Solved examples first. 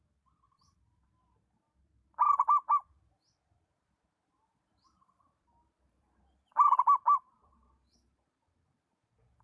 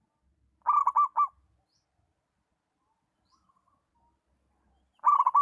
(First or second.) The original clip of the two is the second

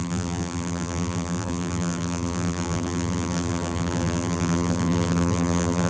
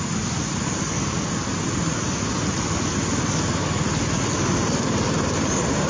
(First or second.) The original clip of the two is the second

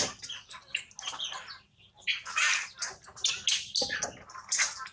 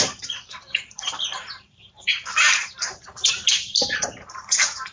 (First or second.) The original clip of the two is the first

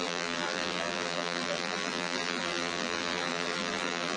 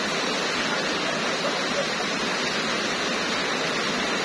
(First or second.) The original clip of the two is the second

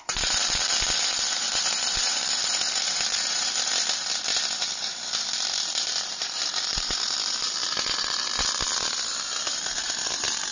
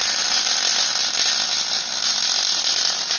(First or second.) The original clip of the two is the second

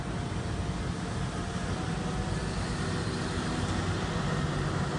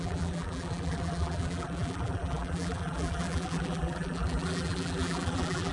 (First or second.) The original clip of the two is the first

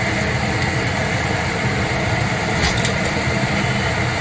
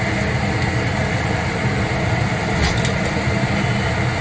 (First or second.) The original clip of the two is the second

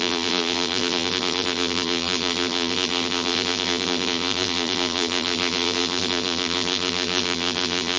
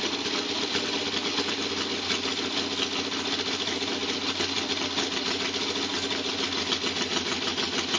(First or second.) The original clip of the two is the second